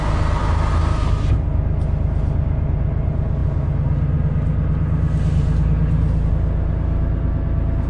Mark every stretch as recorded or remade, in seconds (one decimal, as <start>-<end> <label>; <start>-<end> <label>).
0.0-7.9 recorded